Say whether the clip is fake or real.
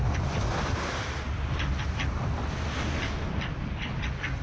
fake